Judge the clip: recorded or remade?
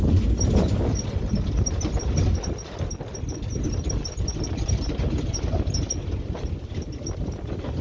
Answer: recorded